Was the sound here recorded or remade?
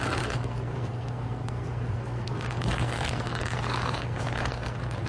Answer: remade